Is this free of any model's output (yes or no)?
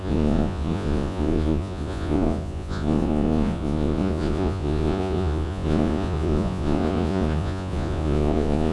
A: no